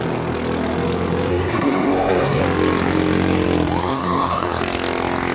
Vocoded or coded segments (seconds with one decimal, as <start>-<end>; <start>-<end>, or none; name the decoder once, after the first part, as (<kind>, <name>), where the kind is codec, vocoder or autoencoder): 1.3-2.4 (codec, SNAC); 3.8-4.6